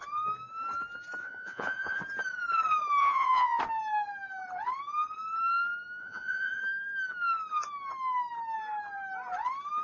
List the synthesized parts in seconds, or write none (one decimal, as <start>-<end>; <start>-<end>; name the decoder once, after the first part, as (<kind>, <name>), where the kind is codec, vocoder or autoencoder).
1.2-2.0 (vocoder, Vocos); 3.0-3.6; 6.0-6.6